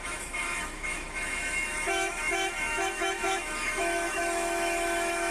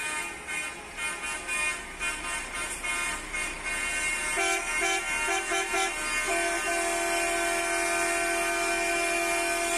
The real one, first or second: second